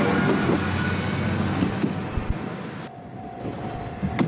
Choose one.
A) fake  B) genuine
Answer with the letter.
B